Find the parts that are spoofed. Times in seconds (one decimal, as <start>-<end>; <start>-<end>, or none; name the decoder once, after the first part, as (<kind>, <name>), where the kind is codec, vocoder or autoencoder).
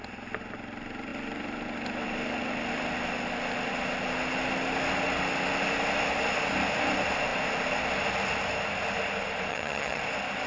9.5-10.0 (vocoder, HiFi-GAN)